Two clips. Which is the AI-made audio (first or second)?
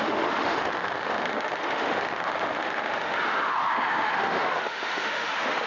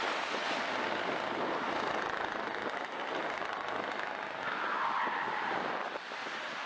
first